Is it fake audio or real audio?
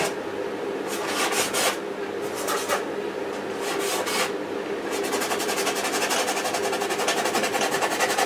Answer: real